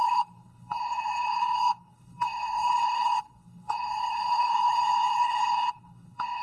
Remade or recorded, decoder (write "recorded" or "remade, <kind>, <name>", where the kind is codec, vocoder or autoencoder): remade, codec, HILCodec